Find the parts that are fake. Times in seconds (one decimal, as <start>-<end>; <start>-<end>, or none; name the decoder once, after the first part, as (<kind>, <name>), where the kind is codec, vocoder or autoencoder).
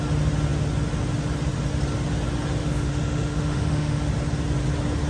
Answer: 2.6-4.1 (autoencoder, DAC-VAE)